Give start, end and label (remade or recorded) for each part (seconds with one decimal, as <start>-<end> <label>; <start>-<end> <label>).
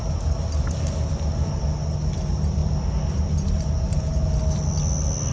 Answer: 0.0-5.3 recorded